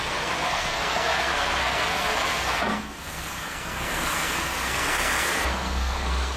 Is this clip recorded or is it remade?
remade